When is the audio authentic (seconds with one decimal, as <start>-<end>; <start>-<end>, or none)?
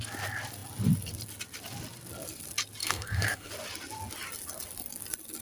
0.0-2.8; 3.5-5.4